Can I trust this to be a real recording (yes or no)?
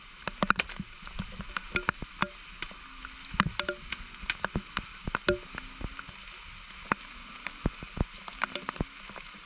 yes